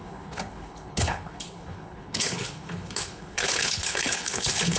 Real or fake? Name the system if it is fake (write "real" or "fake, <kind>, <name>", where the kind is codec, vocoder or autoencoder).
fake, codec, HILCodec